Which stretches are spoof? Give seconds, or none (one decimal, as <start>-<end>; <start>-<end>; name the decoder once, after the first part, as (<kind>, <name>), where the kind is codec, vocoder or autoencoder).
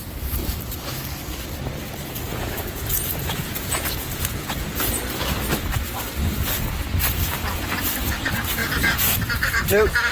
2.3-4.9 (vocoder, Vocos); 8.6-9.2